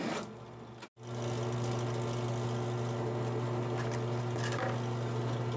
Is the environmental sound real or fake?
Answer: real